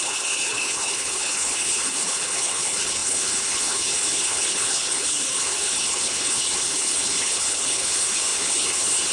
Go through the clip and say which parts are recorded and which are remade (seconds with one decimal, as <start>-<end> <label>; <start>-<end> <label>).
0.0-9.1 remade